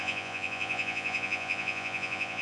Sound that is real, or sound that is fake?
fake